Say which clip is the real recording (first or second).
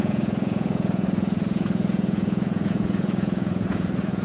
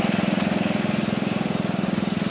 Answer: second